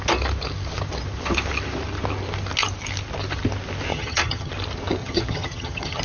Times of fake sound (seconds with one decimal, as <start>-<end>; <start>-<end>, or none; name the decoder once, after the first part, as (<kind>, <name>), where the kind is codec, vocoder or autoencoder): 3.9-4.5 (vocoder, HiFi-GAN); 5.0-6.0